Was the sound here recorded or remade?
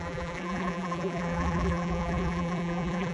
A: remade